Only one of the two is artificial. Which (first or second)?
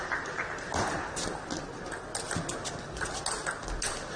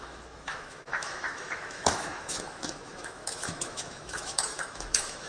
second